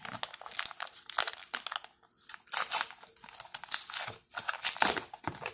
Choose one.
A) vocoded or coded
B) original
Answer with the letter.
B